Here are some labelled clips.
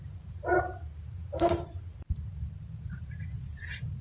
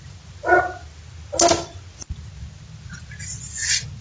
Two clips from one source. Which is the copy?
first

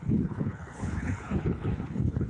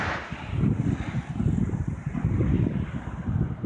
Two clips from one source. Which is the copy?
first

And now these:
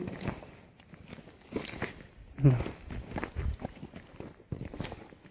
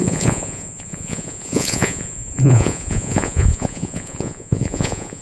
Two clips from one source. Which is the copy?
second